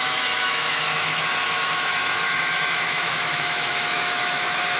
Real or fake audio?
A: fake